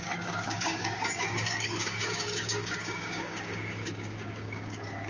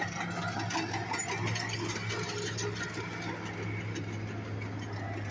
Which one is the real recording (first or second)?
second